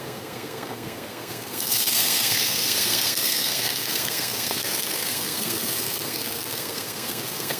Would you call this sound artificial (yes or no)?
yes